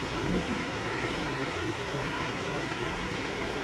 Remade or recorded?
remade